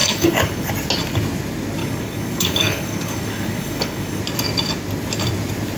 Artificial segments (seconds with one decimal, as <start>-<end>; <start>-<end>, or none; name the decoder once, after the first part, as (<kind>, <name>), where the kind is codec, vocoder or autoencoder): 0.0-0.7 (codec, DAC); 1.8-4.2